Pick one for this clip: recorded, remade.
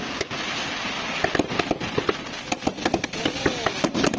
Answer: recorded